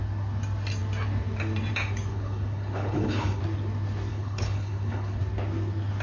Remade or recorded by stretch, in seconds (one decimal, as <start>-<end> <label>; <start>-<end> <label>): 0.0-2.1 recorded; 2.1-3.4 remade; 3.4-4.1 recorded; 4.1-5.2 remade; 5.2-6.0 recorded